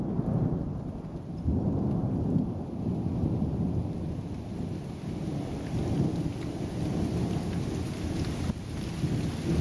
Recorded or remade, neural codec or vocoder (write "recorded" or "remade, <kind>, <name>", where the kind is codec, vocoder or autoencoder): recorded